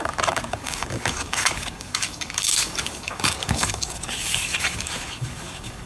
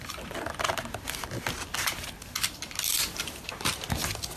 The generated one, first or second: first